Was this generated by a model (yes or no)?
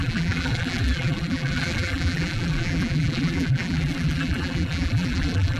yes